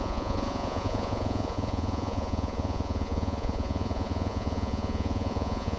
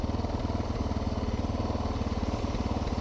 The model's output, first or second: first